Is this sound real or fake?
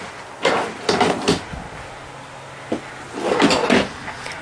real